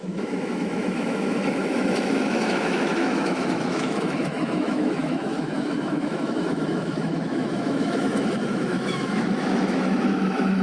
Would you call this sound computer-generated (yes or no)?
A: yes